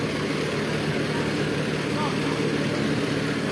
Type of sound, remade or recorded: recorded